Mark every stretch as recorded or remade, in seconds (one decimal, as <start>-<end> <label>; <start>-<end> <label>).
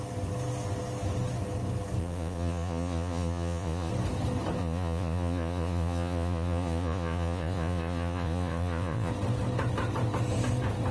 0.0-2.0 recorded; 2.0-3.9 remade; 3.9-4.6 recorded; 4.6-9.1 remade; 9.1-10.9 recorded